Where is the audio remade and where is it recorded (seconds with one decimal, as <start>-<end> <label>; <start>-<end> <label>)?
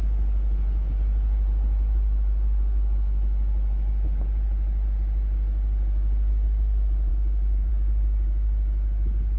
0.0-7.1 recorded; 7.1-7.7 remade; 7.7-9.4 recorded